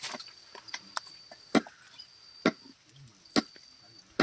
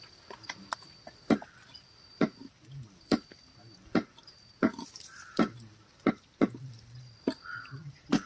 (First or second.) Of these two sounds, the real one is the first